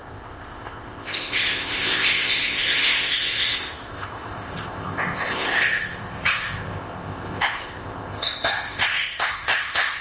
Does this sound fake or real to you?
fake